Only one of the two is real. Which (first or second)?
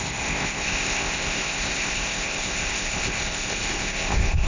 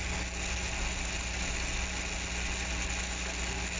second